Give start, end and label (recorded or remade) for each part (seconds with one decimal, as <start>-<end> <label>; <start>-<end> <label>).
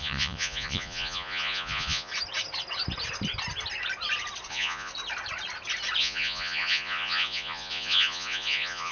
0.0-2.1 remade; 2.1-4.5 recorded; 4.5-4.9 remade; 4.9-6.0 recorded; 6.0-8.9 remade